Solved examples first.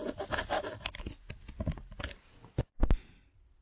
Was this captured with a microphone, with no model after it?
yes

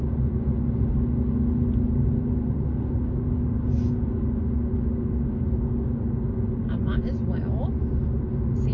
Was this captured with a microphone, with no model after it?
yes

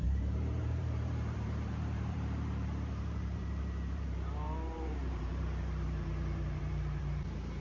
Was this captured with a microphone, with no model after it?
no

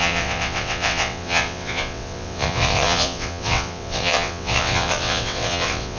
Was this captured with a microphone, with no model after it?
no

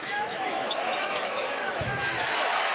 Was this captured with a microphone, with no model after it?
no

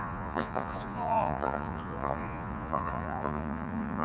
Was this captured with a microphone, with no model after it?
no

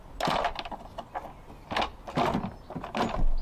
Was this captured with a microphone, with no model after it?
yes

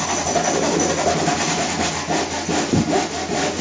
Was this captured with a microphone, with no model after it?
yes